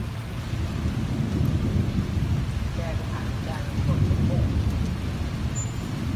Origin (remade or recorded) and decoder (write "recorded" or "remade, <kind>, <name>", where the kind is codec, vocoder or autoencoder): recorded